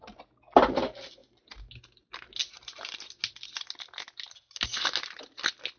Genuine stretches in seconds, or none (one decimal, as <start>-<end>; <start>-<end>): 0.0-5.8